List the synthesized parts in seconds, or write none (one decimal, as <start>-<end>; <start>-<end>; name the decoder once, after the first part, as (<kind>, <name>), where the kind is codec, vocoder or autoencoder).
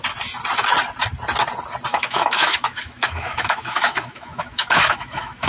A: 1.9-5.5 (autoencoder, DAC-VAE)